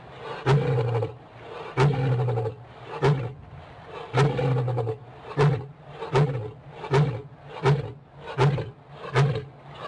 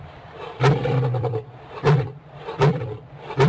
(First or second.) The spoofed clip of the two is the second